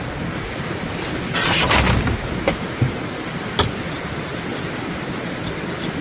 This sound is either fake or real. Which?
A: real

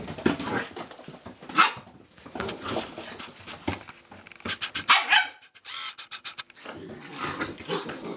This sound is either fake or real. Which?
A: real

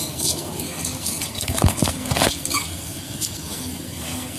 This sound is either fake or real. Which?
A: fake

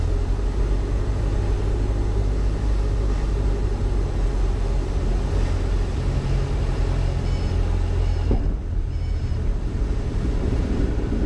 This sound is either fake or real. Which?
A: real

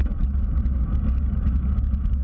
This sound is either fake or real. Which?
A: real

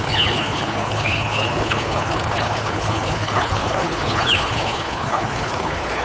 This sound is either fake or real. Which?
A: fake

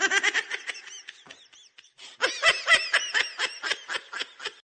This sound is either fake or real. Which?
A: real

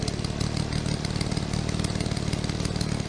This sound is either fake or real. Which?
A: real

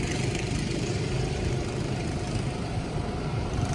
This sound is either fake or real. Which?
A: fake